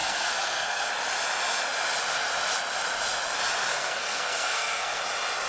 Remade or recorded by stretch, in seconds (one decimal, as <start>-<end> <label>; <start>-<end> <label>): 0.0-0.9 remade; 0.9-3.6 recorded; 3.6-5.0 remade; 5.0-5.5 recorded